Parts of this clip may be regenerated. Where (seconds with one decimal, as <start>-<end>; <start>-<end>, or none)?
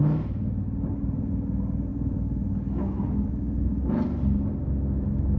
1.9-3.8